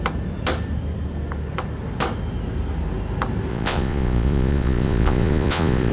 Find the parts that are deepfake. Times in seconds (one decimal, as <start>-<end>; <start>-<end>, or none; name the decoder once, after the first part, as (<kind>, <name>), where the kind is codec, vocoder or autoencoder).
3.5-5.9 (vocoder, Vocos)